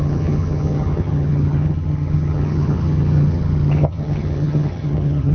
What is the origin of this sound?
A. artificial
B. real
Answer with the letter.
A